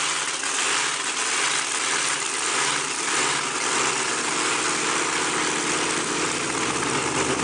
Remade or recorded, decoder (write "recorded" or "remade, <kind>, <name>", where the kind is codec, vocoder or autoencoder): recorded